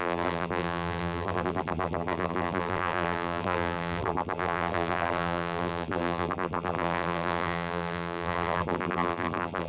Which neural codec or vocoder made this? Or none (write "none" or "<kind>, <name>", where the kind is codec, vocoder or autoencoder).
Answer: vocoder, BigVGAN v2